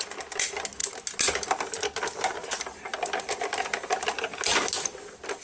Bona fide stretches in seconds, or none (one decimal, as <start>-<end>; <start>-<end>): 0.0-5.4